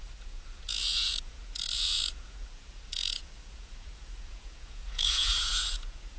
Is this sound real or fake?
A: fake